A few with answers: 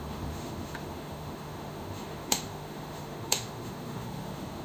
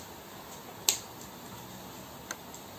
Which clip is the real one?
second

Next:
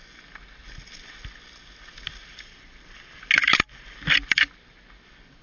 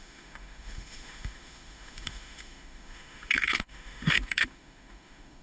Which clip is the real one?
first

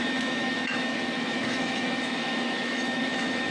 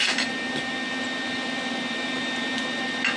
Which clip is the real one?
second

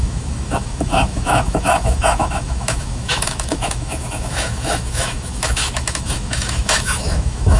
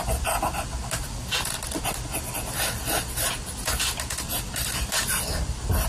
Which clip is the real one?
second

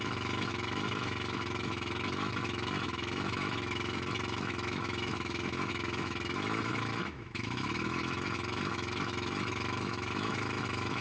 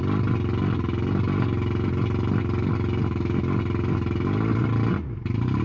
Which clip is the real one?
second